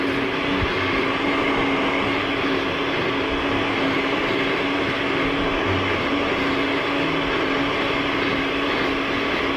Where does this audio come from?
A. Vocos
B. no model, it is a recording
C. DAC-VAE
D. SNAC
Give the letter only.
B